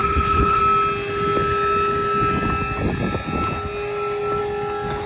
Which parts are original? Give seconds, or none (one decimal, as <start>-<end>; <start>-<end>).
0.6-5.1